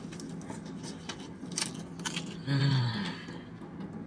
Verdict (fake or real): real